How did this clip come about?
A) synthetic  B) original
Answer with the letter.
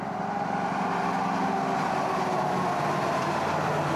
B